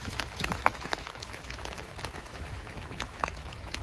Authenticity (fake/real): fake